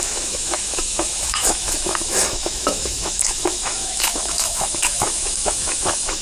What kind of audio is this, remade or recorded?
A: remade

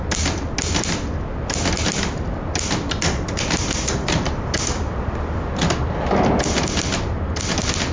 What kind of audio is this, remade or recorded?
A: recorded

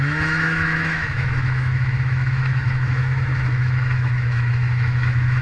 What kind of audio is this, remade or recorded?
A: remade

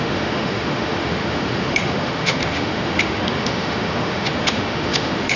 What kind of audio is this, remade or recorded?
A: remade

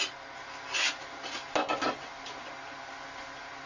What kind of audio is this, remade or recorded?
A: recorded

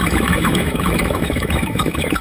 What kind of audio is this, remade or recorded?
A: remade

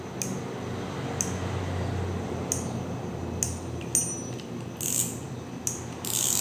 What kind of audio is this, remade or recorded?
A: recorded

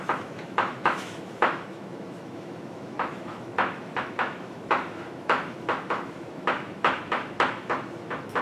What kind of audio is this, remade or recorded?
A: remade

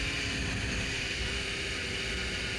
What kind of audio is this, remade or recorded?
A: recorded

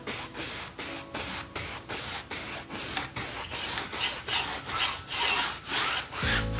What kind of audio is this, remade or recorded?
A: recorded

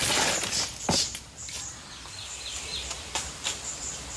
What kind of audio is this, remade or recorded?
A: recorded